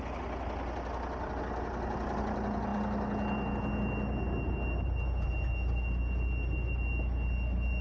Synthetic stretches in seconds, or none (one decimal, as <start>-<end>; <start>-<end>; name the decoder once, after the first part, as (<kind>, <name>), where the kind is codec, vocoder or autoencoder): none

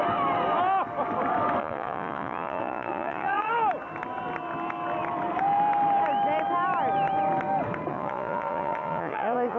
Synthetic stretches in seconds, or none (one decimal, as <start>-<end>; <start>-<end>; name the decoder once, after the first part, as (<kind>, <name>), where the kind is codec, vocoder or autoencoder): 1.6-3.5 (vocoder, Vocos); 7.9-9.6

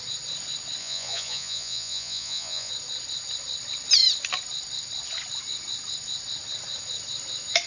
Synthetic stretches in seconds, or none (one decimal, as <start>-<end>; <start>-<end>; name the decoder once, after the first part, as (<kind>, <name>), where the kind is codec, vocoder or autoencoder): 0.8-2.7 (vocoder, Vocos)

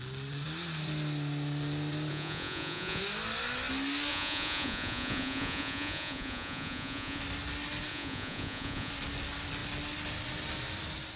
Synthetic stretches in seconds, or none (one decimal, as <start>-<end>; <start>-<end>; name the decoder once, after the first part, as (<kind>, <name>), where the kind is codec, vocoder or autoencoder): 2.1-3.0 (vocoder, Vocos); 4.1-7.2; 7.9-8.9

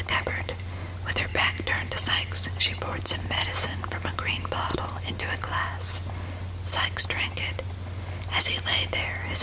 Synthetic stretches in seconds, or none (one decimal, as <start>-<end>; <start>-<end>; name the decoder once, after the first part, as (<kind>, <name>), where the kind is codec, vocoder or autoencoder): none

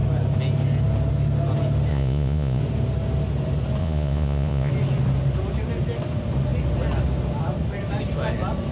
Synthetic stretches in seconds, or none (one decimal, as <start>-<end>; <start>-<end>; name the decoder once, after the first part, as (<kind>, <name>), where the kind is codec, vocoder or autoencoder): 1.9-2.6 (vocoder, Vocos); 3.8-4.7